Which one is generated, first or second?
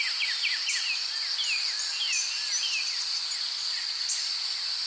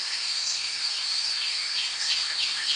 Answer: second